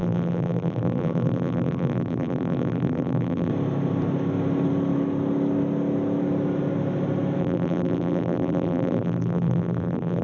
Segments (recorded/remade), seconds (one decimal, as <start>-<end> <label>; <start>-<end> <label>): 0.0-3.5 remade; 3.5-7.4 recorded; 7.4-10.2 remade